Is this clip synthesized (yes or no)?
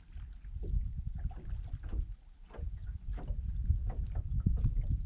no